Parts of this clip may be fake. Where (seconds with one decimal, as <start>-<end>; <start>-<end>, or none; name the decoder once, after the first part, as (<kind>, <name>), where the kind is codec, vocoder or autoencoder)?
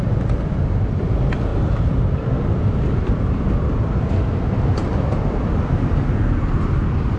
1.5-4.1 (vocoder, BigVGAN v2); 4.8-7.2